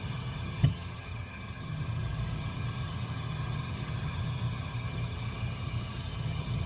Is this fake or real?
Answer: fake